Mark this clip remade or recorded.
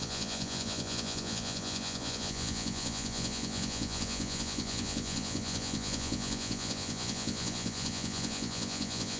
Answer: remade